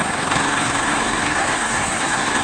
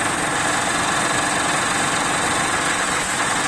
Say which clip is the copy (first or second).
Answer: first